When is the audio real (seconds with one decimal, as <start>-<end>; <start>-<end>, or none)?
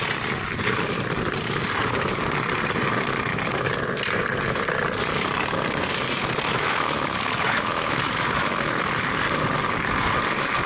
0.0-6.5; 8.8-10.7